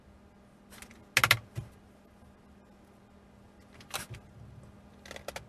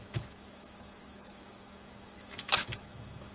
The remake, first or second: second